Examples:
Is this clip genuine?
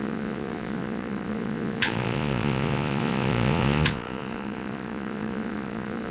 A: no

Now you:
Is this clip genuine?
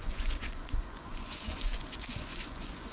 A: no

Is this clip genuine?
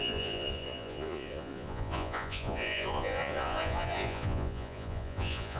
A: no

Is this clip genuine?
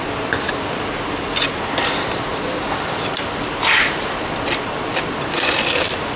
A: yes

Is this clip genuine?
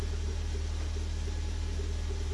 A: yes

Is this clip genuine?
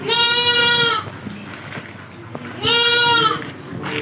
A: yes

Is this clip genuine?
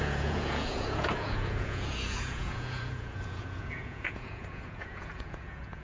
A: no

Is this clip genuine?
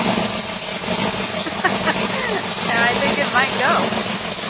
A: yes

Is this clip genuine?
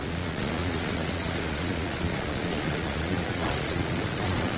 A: no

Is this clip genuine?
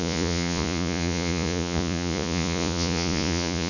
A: no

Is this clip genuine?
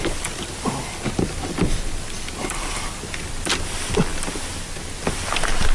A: yes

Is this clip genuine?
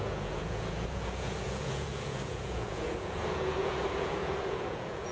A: no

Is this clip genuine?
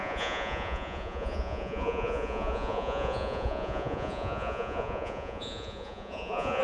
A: no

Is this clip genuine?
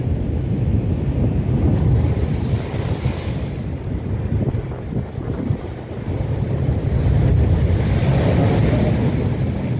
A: yes